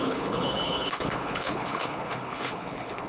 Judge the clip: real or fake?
fake